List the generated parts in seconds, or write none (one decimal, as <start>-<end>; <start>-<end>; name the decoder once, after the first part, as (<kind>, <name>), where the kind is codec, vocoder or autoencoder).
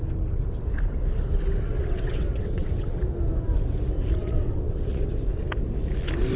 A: 1.7-3.0 (vocoder, WaveNeXt); 4.2-5.1